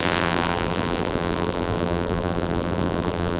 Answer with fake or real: fake